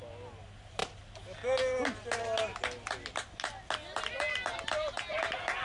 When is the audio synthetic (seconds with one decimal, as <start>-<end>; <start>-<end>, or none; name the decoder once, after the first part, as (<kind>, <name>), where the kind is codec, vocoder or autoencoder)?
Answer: none